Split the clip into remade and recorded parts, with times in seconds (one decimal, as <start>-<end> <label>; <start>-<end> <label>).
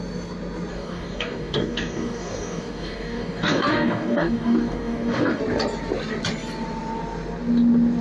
0.0-0.7 recorded; 0.7-5.4 remade; 5.4-8.0 recorded